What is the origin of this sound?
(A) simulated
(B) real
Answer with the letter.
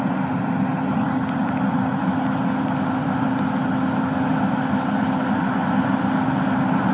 B